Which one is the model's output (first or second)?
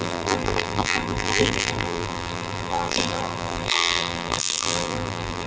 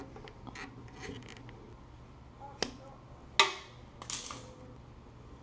first